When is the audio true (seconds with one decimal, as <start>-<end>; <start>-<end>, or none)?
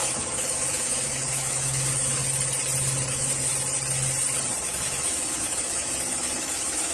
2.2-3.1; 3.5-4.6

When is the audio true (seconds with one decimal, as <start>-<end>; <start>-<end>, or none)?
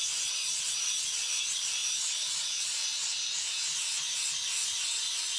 none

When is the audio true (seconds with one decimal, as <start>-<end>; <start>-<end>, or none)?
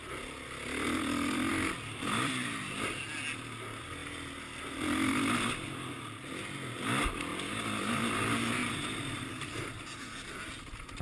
0.0-1.5; 3.0-8.6; 10.5-11.0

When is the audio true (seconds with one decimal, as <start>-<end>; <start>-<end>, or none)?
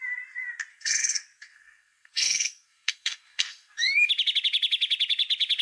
0.0-0.7; 4.1-5.6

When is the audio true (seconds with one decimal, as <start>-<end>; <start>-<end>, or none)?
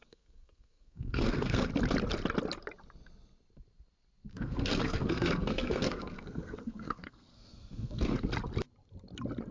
1.7-4.3; 8.3-9.5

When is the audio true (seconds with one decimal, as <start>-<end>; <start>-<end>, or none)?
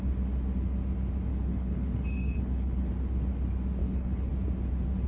0.0-1.3; 2.9-3.8; 4.3-5.1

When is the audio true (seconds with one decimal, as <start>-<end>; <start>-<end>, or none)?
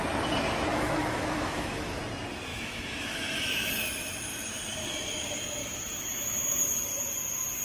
0.0-0.7; 2.0-2.5; 3.7-5.6; 6.6-7.6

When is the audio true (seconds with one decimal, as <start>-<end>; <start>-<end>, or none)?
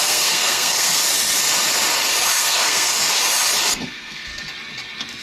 1.0-2.4; 2.9-3.7; 4.3-5.2